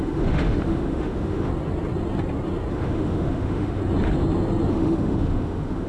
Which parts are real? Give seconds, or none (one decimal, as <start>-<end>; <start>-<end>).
1.5-2.7; 3.8-4.7